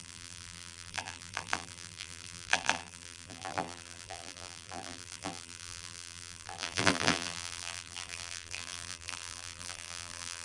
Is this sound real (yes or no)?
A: no